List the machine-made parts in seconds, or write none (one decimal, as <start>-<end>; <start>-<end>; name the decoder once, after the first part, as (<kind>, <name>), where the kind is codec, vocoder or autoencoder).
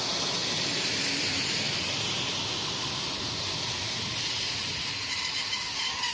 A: 0.4-1.2 (vocoder, BigVGAN v2)